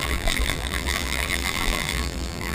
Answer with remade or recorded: remade